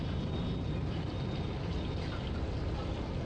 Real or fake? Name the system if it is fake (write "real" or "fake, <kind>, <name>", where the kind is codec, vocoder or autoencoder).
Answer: real